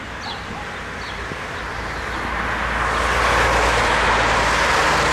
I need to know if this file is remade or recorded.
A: recorded